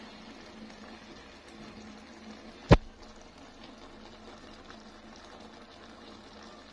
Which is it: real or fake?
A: real